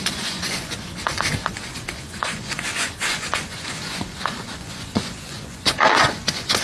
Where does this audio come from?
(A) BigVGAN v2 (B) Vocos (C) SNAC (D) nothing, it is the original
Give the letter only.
B